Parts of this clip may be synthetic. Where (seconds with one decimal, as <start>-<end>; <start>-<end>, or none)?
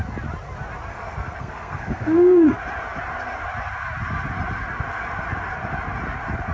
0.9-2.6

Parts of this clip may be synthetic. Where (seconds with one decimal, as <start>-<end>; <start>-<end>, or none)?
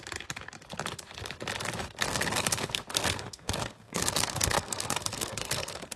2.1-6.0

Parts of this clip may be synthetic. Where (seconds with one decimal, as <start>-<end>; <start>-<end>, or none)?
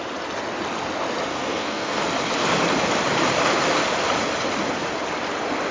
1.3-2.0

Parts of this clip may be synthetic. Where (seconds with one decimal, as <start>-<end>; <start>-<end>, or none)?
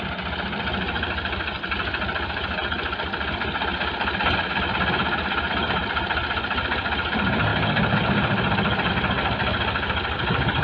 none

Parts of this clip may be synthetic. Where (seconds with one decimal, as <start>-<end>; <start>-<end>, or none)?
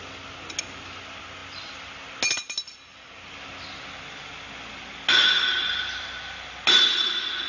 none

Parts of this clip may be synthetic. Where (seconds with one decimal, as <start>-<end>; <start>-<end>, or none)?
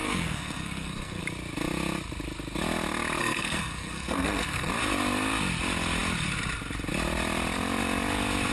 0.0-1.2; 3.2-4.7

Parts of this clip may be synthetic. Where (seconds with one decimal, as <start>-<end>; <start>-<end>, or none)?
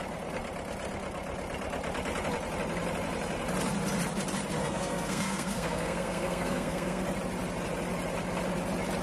4.6-7.0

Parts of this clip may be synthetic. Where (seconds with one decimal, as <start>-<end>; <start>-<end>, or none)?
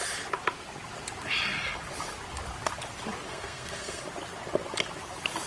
3.3-4.0